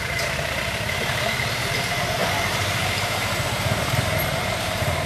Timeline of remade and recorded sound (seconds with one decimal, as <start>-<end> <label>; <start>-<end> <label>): 0.0-5.1 remade